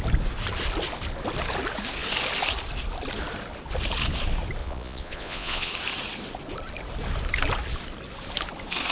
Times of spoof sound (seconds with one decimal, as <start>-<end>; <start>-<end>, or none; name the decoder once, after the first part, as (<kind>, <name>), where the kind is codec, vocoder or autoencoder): 4.6-5.7 (vocoder, Vocos)